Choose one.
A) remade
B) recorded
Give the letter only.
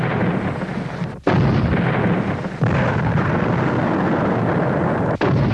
B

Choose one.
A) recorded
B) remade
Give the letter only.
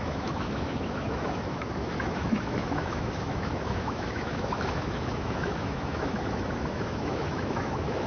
B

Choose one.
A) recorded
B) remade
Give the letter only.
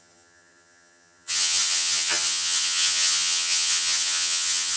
B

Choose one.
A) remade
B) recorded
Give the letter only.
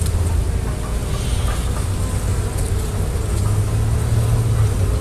B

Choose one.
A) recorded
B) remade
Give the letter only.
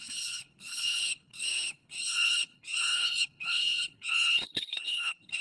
B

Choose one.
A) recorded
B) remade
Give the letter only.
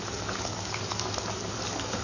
B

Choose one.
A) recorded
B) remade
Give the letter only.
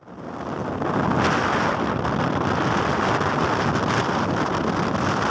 A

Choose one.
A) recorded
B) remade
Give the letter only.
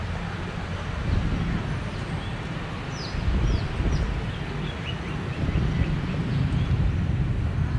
A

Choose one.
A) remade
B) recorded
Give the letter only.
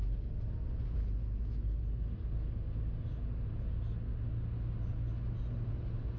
B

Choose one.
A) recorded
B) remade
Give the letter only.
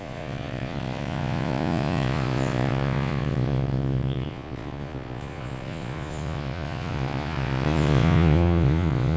B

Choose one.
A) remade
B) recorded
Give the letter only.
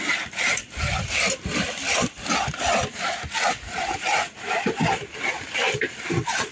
B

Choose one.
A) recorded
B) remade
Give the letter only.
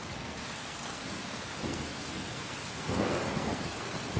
B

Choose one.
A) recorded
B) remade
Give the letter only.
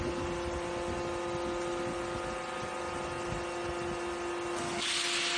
A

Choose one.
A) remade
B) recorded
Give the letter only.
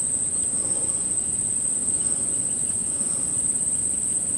A